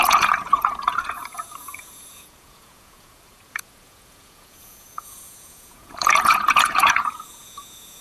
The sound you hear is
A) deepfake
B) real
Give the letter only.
A